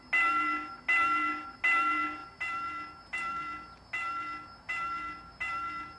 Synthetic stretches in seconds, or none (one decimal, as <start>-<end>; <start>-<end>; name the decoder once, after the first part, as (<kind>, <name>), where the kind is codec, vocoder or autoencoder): none

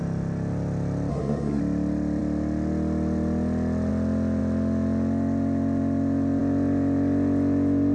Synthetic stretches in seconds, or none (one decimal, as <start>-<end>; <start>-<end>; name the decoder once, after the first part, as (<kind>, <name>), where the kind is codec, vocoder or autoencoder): 1.1-1.6 (codec, SNAC)

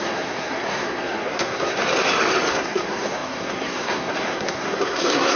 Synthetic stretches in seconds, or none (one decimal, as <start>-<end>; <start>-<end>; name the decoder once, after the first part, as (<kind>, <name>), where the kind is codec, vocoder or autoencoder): 0.0-1.8 (codec, SNAC); 2.5-5.4